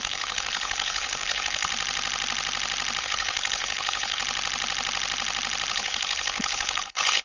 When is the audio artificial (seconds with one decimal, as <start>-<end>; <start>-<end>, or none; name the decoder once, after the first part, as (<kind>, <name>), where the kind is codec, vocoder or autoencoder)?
0.0-1.7 (codec, HILCodec); 3.0-4.2; 5.7-7.2